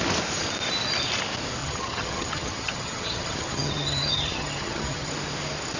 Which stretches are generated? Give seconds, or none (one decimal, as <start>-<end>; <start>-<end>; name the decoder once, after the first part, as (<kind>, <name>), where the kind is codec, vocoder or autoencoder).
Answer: 1.6-5.1 (vocoder, HiFi-GAN)